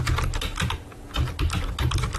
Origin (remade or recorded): recorded